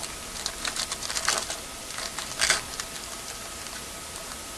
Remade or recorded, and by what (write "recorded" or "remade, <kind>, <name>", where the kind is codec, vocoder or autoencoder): recorded